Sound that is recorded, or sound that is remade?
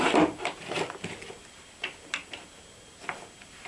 recorded